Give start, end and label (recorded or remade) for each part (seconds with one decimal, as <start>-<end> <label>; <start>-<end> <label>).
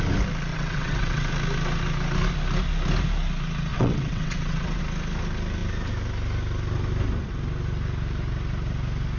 0.0-0.5 recorded; 0.5-1.3 remade; 1.3-3.7 recorded; 3.7-4.8 remade; 4.8-9.2 recorded